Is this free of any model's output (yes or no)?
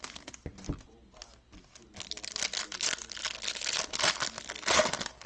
yes